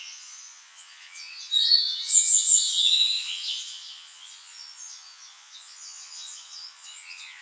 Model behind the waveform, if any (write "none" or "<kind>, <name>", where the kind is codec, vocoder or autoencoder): vocoder, Vocos